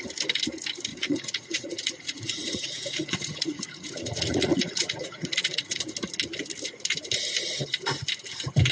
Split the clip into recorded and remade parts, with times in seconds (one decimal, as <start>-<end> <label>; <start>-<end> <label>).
0.0-0.9 recorded; 0.9-5.8 remade; 5.8-8.7 recorded